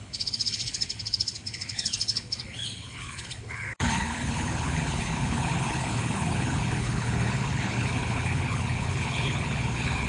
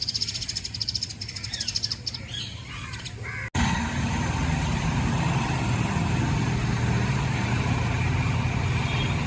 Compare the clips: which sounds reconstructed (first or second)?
first